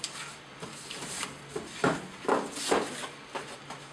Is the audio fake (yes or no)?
no